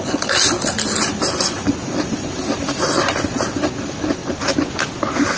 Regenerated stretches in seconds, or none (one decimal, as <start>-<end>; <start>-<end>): none